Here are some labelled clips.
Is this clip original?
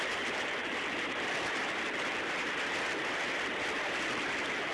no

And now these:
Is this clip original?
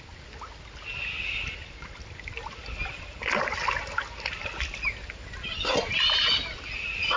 yes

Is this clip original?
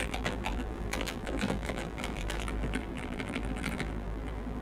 no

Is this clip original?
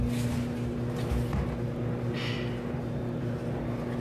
yes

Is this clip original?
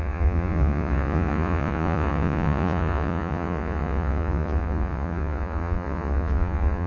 no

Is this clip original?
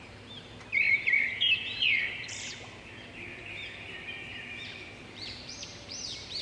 no